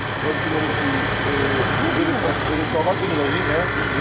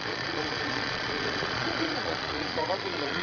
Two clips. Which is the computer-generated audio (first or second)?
second